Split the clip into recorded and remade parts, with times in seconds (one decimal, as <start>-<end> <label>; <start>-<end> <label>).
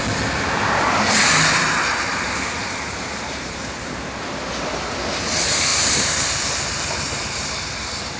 0.0-2.6 recorded; 2.6-4.2 remade; 4.2-8.2 recorded